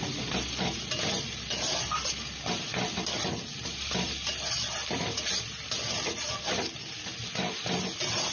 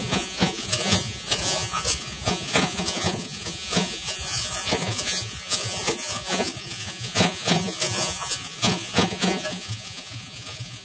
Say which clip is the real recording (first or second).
first